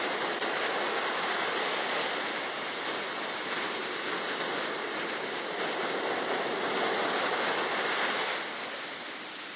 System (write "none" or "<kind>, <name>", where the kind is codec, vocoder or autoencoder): none